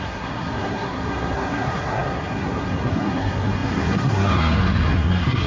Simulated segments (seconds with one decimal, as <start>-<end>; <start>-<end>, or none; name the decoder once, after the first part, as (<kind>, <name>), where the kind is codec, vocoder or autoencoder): 0.0-5.5 (codec, SNAC)